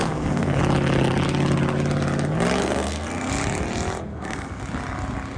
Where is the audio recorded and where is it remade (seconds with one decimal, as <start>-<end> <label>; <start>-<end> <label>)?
0.0-0.6 remade; 0.6-2.6 recorded; 2.6-3.3 remade; 3.3-4.1 recorded; 4.1-4.6 remade; 4.6-5.4 recorded